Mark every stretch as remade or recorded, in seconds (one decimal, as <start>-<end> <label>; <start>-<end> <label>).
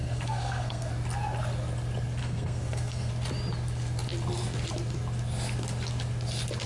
0.0-0.9 remade; 0.9-2.2 recorded; 2.2-3.1 remade; 3.1-6.7 recorded